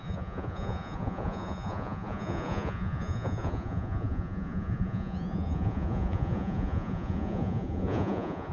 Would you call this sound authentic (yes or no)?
no